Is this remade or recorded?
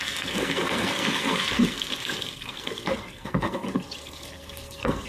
remade